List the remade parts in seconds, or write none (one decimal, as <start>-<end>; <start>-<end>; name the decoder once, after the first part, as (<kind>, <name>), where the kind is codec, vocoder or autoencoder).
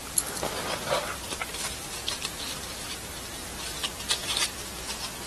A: 0.6-3.3 (vocoder, BigVGAN v2)